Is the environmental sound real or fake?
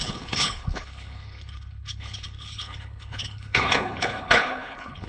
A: fake